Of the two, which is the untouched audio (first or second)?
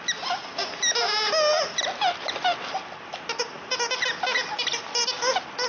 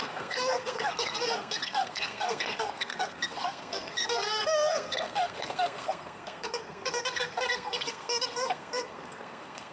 first